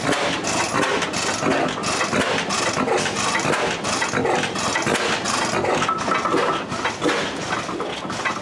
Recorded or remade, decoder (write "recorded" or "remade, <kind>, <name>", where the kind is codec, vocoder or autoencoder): recorded